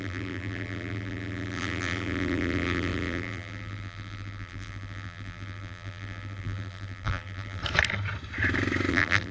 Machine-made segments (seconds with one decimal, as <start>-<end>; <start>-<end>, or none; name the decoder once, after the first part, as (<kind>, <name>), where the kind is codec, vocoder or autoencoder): 0.0-7.6 (vocoder, BigVGAN v2); 8.9-9.3